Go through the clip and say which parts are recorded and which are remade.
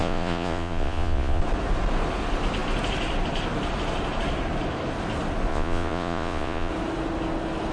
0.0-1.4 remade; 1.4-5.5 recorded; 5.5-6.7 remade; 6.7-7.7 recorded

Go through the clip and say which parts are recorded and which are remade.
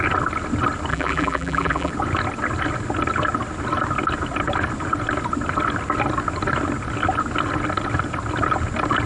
0.0-0.9 recorded; 0.9-1.9 remade; 1.9-9.1 recorded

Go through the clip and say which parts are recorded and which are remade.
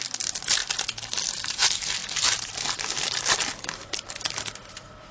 0.0-0.6 recorded; 0.6-1.5 remade; 1.5-2.0 recorded; 2.0-5.1 remade